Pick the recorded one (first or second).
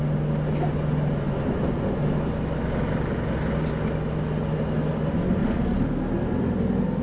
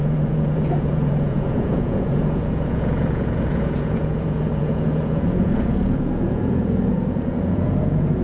first